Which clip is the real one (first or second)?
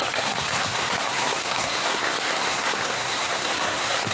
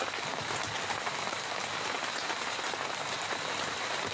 second